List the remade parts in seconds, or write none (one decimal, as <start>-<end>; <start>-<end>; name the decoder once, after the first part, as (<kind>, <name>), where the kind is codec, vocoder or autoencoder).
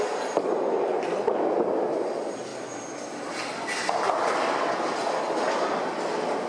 none